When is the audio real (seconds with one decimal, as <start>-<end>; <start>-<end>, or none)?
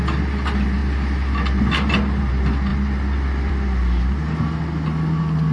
0.0-5.5